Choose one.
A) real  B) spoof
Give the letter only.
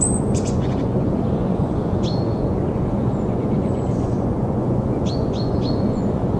B